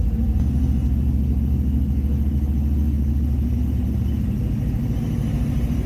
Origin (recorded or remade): recorded